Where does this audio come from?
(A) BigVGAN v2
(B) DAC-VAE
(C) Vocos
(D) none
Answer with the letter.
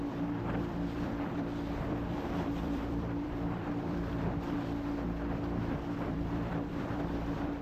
A